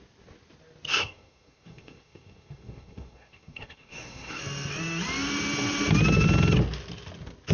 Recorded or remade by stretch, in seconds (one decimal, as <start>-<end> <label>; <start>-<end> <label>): 0.0-0.9 recorded; 0.9-4.4 remade; 4.4-7.5 recorded

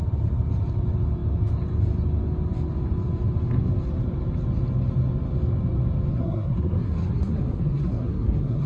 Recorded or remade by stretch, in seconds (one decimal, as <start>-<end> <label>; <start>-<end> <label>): 0.0-6.1 recorded; 6.1-8.7 remade

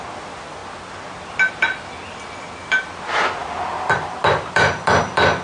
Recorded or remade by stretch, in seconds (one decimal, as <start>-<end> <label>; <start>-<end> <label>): 0.0-5.4 recorded